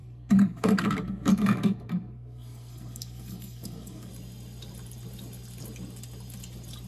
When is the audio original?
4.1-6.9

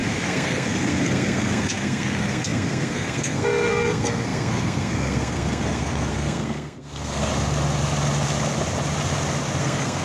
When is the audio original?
7.3-9.6

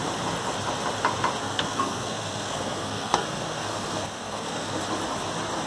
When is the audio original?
0.0-1.4; 4.8-5.7

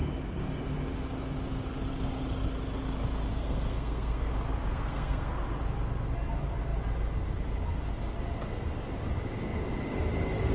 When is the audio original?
0.0-3.3; 4.3-4.7; 5.3-10.5

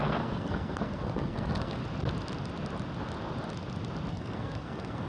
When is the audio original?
1.8-4.1

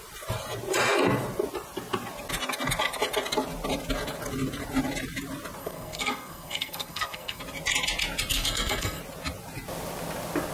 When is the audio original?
0.0-5.6; 7.4-8.3; 9.0-10.5